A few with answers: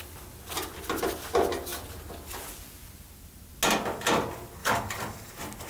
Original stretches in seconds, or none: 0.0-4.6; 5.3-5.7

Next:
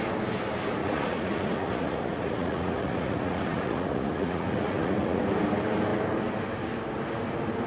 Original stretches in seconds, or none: 0.0-0.8; 5.2-7.7

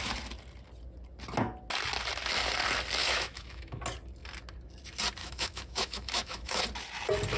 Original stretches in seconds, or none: 0.0-3.0; 3.8-5.2; 6.6-7.4

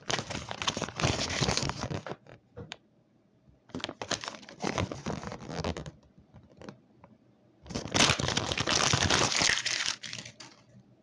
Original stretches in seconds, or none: 0.0-1.6; 3.8-11.0

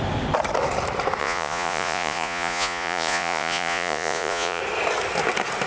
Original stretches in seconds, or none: 0.0-1.2; 4.6-5.7

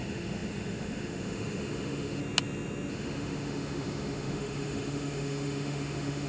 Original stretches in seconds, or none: 2.2-2.9

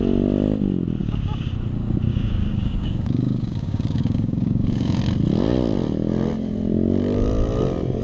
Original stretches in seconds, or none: 0.0-1.0; 1.5-2.1; 5.0-8.0